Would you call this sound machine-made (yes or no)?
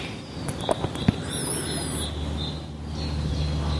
no